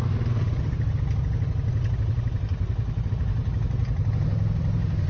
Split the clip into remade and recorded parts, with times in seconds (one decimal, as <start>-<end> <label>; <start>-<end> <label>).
0.0-5.1 recorded